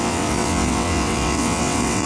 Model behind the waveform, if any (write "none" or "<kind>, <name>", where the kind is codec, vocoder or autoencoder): vocoder, WaveNeXt